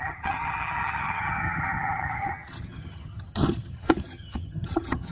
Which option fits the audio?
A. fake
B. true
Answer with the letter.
A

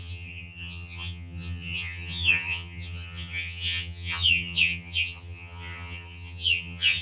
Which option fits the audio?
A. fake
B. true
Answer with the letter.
A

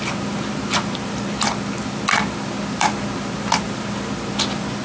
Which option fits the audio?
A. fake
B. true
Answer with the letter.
B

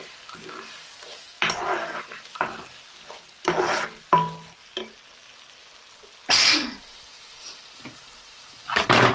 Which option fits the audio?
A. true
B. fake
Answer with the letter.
A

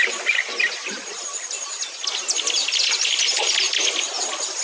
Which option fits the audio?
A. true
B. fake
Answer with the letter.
A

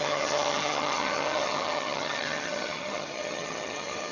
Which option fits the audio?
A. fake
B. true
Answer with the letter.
A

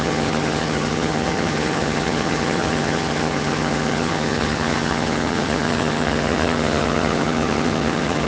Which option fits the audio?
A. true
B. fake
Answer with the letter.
B